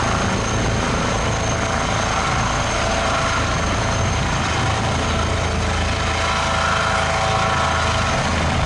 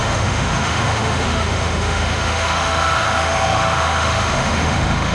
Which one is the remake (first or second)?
second